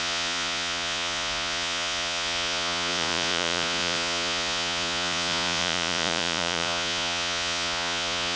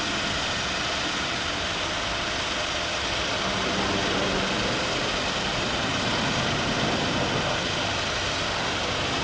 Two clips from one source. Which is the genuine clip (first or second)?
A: second